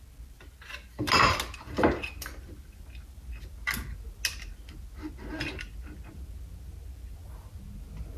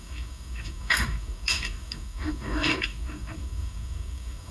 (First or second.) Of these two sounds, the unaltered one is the first